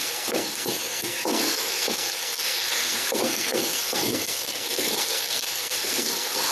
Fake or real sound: fake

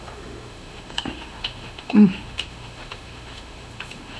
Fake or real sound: fake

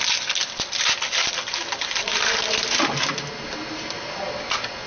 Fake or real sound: real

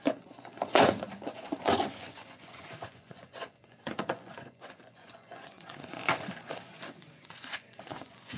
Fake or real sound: fake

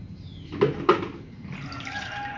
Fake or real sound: real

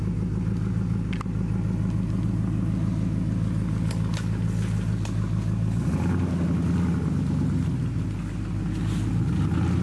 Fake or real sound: real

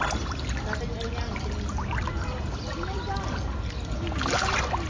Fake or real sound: real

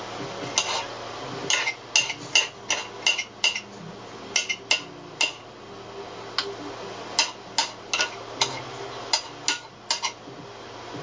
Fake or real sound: real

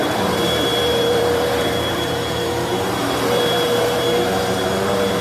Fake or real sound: fake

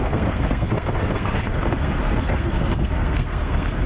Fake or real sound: fake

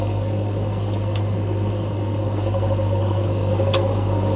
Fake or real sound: fake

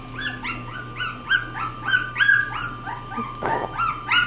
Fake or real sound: real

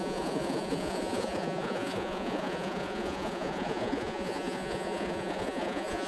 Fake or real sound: fake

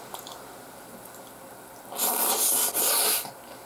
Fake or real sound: real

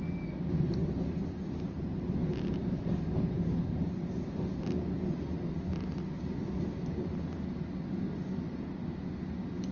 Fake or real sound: real